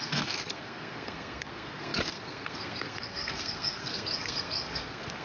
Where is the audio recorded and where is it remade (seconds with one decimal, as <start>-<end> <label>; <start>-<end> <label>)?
0.0-5.2 remade

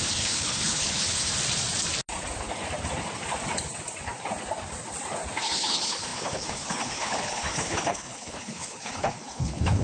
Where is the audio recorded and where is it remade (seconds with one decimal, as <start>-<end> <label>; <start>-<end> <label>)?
0.0-1.3 remade; 1.3-5.4 recorded; 5.4-9.8 remade

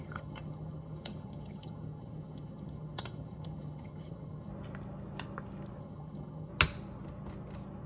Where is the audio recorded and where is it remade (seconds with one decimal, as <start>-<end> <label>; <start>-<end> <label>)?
0.0-4.5 remade; 4.5-5.8 recorded; 5.8-6.5 remade; 6.5-7.9 recorded

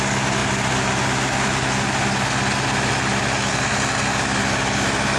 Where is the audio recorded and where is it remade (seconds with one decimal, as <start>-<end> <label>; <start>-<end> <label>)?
0.0-5.2 recorded

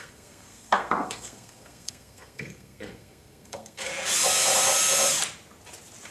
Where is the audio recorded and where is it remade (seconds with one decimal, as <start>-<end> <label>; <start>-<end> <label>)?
0.0-3.9 remade; 3.9-6.1 recorded

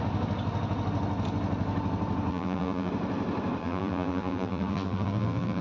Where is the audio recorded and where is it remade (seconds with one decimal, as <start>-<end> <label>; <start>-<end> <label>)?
0.0-2.3 recorded; 2.3-2.9 remade; 2.9-3.6 recorded; 3.6-5.6 remade

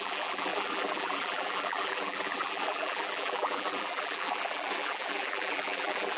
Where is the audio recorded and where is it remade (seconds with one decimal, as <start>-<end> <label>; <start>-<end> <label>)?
0.0-6.2 remade